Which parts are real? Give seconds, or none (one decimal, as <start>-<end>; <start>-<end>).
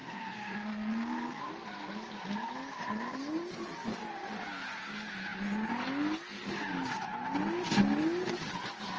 1.4-9.0